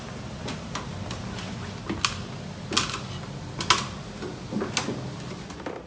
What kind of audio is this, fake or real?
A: real